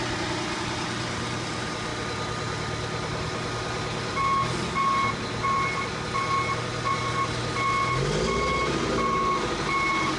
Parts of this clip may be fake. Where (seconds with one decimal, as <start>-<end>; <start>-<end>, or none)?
none